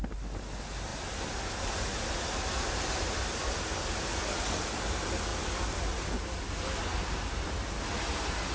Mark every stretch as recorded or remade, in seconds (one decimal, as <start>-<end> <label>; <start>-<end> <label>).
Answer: 0.0-8.5 recorded